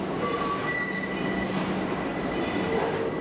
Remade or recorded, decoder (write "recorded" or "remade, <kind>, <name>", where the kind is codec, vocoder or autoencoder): recorded